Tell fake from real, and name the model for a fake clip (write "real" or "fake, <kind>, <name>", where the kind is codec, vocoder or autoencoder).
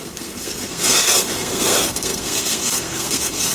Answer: fake, codec, SNAC